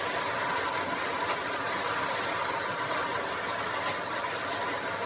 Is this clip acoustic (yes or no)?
yes